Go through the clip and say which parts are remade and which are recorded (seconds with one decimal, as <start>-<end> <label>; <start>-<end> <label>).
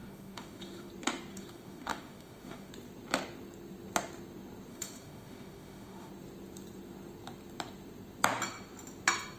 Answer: 0.0-0.9 remade; 0.9-1.3 recorded; 1.3-2.7 remade; 2.7-4.7 recorded; 4.7-6.1 remade; 6.1-9.4 recorded